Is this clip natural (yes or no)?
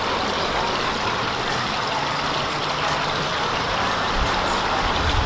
yes